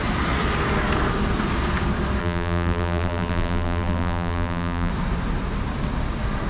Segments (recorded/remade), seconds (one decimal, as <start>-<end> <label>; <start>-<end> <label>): 0.0-2.2 recorded; 2.2-4.9 remade; 4.9-6.5 recorded